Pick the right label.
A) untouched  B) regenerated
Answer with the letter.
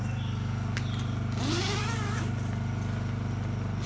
A